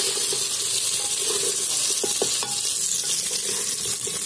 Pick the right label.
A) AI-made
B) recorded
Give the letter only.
B